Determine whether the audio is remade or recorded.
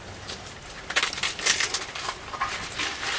recorded